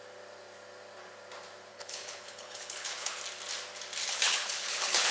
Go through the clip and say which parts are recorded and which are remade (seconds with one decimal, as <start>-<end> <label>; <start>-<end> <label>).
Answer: 0.0-1.7 recorded; 1.7-3.2 remade; 3.2-4.0 recorded; 4.0-5.1 remade